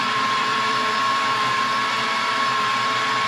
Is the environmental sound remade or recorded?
remade